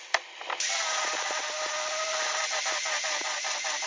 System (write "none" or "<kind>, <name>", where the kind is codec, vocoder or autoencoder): none